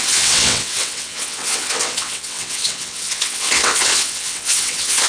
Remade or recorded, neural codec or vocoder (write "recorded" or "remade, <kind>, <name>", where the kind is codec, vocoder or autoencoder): remade, vocoder, WaveNeXt